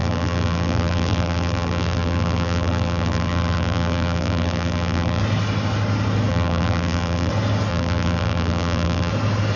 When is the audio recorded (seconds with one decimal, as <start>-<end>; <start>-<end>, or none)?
5.2-6.3; 7.3-7.7; 9.1-9.6